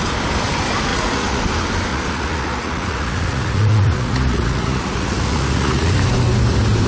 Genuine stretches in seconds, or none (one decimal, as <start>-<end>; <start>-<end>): 0.0-0.9; 1.4-1.9; 5.9-6.9